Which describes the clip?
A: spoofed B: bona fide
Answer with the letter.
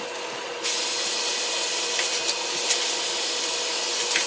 B